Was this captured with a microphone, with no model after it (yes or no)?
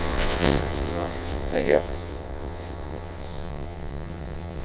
no